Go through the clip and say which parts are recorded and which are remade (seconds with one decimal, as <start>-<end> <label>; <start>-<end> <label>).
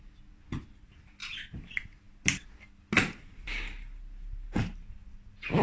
0.0-5.6 recorded